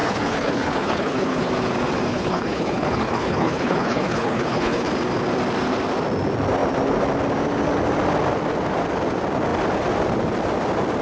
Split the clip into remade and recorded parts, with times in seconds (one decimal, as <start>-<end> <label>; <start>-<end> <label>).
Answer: 0.0-1.5 remade; 1.5-2.1 recorded; 2.1-4.9 remade; 4.9-11.0 recorded